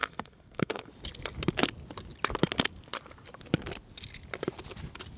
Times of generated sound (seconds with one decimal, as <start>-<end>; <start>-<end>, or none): 0.0-0.9